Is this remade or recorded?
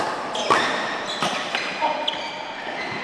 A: recorded